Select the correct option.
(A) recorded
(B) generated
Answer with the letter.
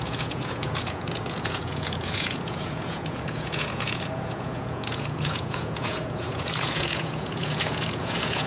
B